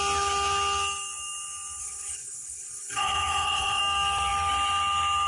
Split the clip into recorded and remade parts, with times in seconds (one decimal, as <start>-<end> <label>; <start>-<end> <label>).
0.0-1.8 recorded; 1.8-3.8 remade; 3.8-5.3 recorded